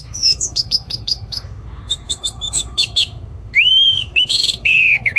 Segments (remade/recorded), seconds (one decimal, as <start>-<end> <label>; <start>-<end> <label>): 0.0-5.2 remade